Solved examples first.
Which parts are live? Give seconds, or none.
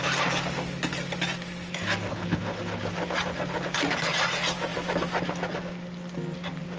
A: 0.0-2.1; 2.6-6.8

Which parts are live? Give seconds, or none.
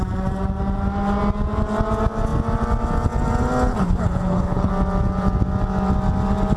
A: 0.0-3.7; 4.7-6.6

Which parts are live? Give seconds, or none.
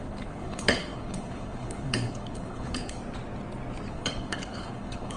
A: 3.0-3.9